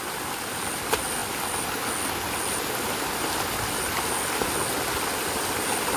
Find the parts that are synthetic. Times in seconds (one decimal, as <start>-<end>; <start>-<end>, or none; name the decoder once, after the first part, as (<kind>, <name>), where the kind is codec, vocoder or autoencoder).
none